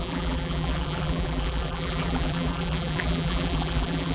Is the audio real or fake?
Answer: fake